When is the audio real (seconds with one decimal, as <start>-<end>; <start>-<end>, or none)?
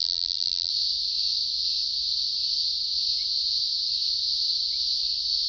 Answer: 0.7-5.5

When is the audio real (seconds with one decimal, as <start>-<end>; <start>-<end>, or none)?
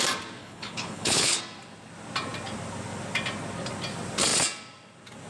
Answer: 0.0-0.4; 1.4-5.3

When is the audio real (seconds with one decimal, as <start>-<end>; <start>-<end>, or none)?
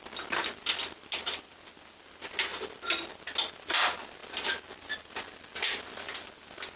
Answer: 0.0-6.8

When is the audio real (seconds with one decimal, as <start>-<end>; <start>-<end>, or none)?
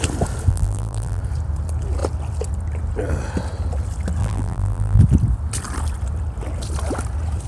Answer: 0.0-0.5; 1.2-4.2; 5.0-7.5